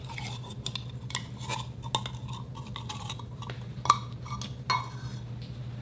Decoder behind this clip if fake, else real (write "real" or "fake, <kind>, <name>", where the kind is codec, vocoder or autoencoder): real